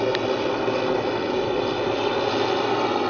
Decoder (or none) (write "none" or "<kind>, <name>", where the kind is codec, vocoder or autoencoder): none